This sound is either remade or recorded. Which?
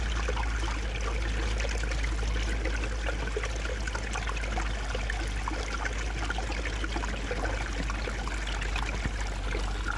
recorded